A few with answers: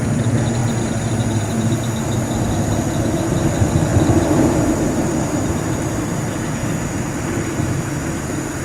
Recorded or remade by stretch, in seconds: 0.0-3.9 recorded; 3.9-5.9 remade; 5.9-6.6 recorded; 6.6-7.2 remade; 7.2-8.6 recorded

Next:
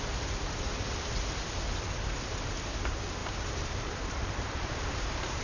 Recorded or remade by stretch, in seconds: 0.0-3.2 recorded; 3.2-5.4 remade

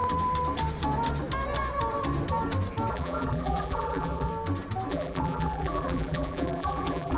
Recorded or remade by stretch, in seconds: 0.0-2.9 recorded; 2.9-4.3 remade; 4.3-4.9 recorded; 4.9-7.2 remade

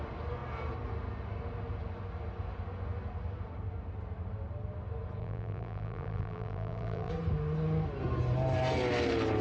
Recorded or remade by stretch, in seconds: 0.0-5.2 recorded; 5.2-7.1 remade; 7.1-9.4 recorded

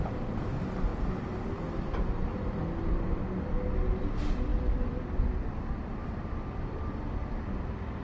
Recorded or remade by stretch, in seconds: 0.0-4.5 recorded; 4.5-7.6 remade; 7.6-8.0 recorded

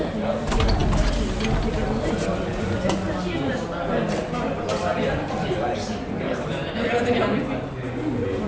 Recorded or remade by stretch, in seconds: 0.0-4.9 recorded; 4.9-6.7 remade; 6.7-8.5 recorded